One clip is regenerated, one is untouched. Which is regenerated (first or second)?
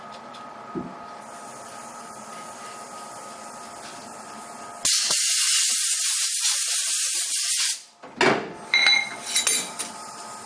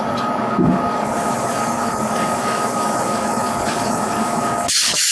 second